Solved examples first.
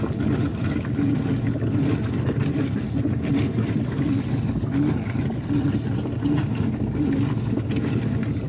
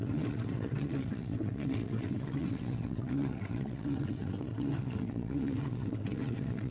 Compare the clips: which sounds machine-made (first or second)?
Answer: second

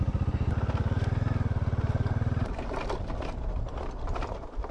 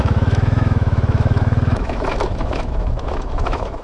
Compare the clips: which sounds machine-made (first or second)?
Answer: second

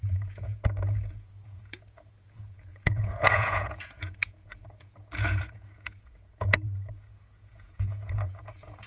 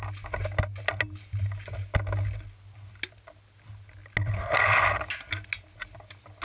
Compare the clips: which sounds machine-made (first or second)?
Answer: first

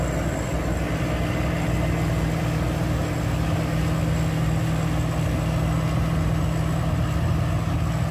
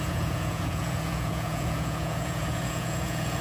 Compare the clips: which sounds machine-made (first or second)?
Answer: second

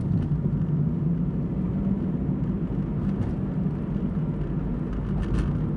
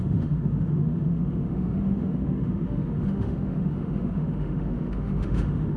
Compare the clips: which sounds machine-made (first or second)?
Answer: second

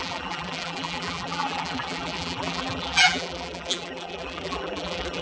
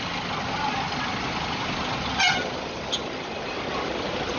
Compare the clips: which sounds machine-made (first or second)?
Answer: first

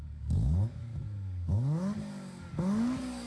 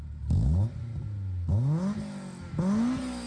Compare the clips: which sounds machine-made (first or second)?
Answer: first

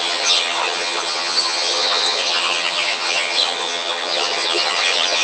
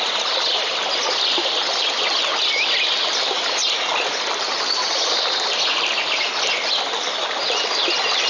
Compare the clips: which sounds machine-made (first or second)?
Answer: first